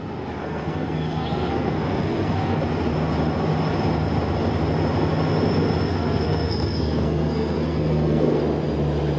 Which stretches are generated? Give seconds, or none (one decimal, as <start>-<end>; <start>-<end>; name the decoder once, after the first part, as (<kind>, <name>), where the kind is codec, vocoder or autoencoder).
0.4-2.6 (codec, SNAC); 5.9-8.4